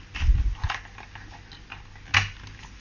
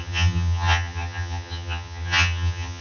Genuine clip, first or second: first